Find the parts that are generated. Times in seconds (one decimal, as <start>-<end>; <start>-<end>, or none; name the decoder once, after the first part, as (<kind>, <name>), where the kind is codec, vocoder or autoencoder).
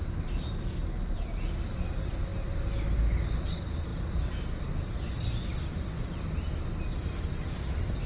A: none